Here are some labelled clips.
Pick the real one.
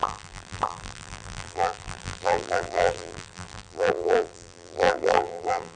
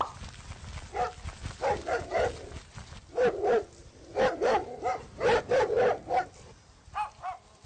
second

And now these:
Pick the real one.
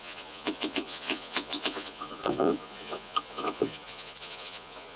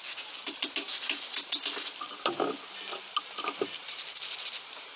second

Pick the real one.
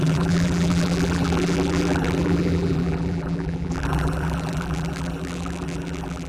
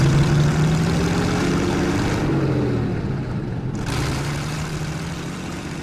second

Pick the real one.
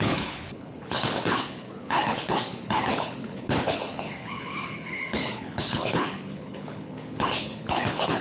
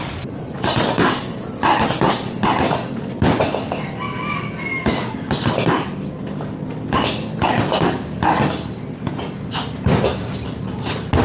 second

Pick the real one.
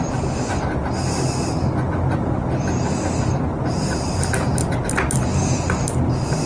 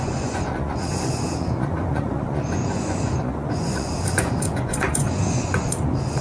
first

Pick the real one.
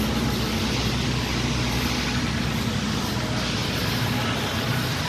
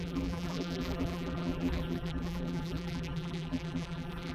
first